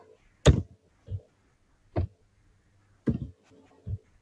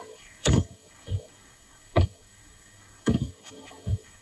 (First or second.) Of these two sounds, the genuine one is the first